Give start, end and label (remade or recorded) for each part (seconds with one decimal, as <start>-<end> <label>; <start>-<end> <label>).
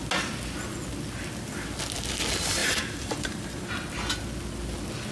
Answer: 0.0-2.6 recorded; 2.6-3.7 remade; 3.7-5.1 recorded